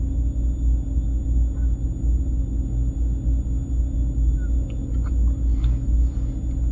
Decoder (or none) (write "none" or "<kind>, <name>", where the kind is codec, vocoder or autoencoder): none